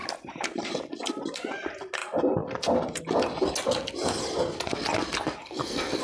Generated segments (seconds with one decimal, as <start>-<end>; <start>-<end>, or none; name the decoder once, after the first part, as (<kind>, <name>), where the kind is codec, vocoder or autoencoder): 5.4-6.0 (codec, SNAC)